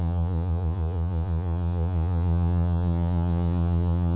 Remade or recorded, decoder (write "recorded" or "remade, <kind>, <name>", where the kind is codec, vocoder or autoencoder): remade, vocoder, Vocos